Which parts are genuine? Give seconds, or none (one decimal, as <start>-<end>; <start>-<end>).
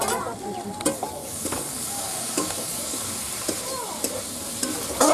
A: 0.0-1.2; 3.3-5.1